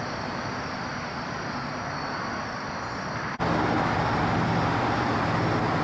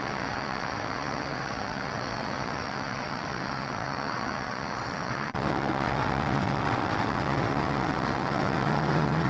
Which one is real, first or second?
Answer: first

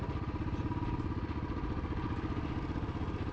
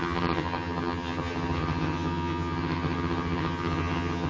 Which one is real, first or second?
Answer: first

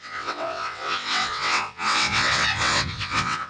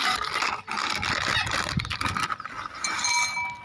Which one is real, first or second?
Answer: second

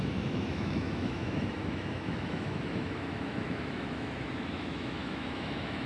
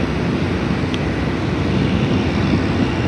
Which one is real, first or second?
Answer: second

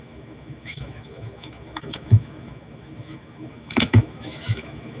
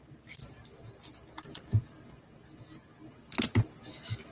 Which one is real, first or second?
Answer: second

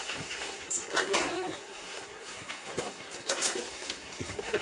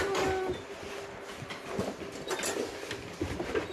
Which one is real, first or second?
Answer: second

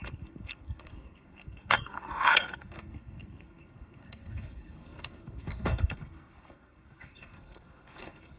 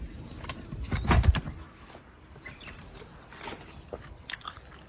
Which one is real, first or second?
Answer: second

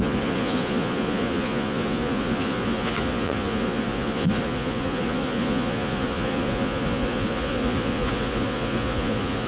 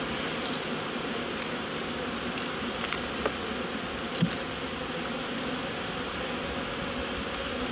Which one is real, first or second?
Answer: second